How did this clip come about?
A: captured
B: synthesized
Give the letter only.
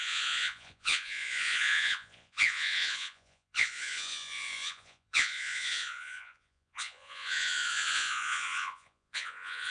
B